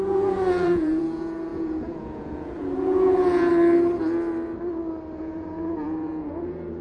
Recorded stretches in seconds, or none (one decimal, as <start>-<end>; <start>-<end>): 3.5-5.2